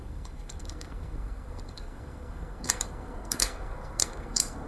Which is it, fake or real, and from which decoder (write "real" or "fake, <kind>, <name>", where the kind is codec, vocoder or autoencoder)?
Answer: fake, codec, SNAC